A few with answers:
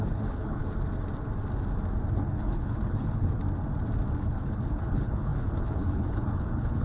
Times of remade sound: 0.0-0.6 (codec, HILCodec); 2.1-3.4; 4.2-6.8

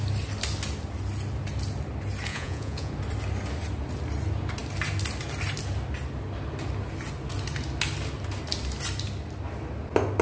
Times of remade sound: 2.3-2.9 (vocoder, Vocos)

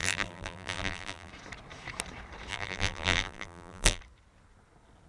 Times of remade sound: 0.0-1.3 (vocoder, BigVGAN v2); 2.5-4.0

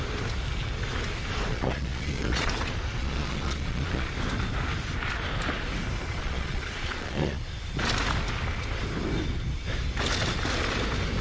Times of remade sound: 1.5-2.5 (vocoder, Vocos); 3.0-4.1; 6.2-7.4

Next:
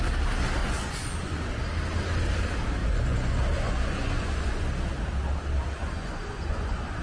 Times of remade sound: 0.6-1.6 (vocoder, Vocos); 2.8-4.7; 5.8-7.0

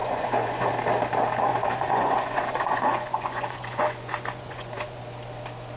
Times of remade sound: 0.0-0.7 (vocoder, Vocos); 1.5-5.0